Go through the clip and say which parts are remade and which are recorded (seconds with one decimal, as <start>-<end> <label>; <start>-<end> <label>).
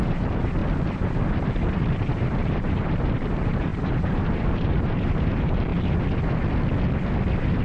0.0-0.6 remade; 0.6-1.9 recorded; 1.9-5.7 remade; 5.7-7.6 recorded